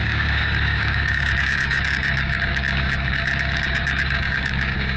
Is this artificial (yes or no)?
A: yes